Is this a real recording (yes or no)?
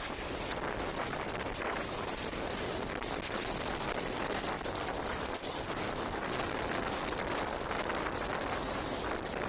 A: yes